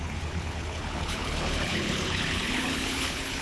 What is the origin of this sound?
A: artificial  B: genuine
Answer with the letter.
A